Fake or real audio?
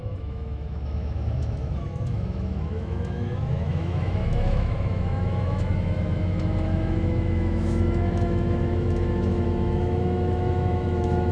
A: fake